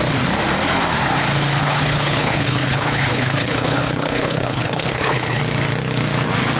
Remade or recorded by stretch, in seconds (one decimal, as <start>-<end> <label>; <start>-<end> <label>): 0.0-1.6 recorded; 1.6-5.4 remade; 5.4-6.6 recorded